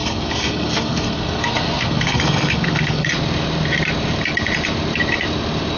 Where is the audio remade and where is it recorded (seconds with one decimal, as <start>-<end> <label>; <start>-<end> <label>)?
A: 0.0-3.1 remade; 3.1-5.8 recorded